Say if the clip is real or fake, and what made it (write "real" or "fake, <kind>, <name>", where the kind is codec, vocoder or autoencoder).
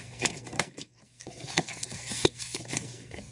fake, codec, SNAC